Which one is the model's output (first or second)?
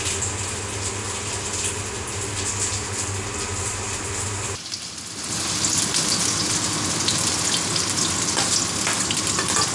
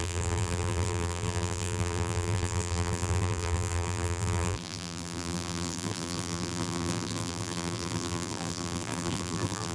second